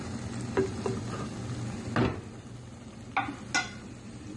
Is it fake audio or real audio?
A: real